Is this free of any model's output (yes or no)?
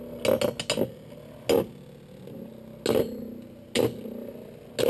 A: yes